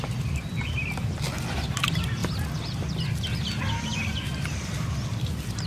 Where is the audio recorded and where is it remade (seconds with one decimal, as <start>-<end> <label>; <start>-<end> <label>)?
0.0-5.7 recorded